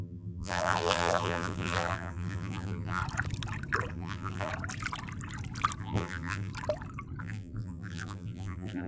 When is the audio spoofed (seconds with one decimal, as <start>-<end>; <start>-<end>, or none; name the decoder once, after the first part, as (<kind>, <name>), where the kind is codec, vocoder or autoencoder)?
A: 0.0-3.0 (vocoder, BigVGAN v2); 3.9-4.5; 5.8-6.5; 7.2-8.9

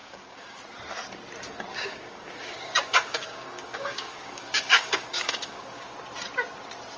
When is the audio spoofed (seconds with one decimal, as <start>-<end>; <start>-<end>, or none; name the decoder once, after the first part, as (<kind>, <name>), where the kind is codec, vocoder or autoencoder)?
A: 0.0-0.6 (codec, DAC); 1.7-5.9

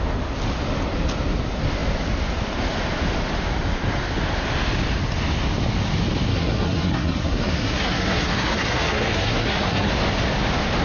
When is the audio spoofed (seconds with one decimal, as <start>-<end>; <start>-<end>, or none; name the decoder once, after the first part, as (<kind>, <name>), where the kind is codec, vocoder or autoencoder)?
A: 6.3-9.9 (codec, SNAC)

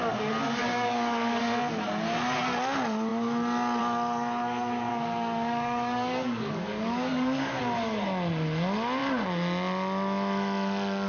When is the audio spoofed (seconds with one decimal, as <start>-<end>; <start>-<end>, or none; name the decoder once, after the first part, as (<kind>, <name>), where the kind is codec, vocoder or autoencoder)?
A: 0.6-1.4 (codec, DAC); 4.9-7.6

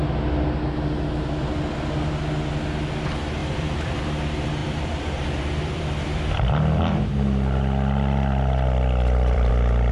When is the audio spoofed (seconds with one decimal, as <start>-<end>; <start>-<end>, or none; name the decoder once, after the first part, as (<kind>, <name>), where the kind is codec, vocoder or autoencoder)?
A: 3.4-4.0 (vocoder, BigVGAN v2); 4.6-9.5

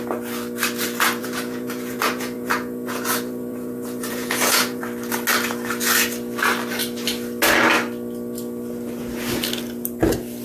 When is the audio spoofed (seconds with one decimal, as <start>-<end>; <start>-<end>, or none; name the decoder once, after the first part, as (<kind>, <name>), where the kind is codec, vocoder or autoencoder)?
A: 1.2-4.8 (vocoder, Vocos)